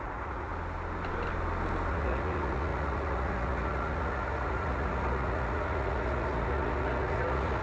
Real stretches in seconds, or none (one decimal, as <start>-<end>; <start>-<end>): 0.5-1.9